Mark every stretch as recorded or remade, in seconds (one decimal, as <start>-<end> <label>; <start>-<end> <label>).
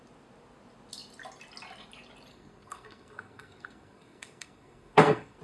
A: 0.0-2.3 recorded; 2.3-5.4 remade